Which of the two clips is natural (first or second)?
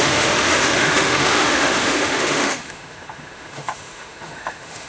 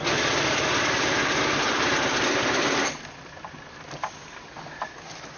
second